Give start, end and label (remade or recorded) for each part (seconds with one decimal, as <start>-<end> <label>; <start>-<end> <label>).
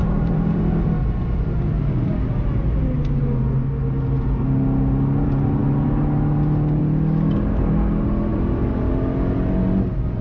0.0-0.6 remade; 0.6-8.3 recorded; 8.3-8.9 remade; 8.9-10.2 recorded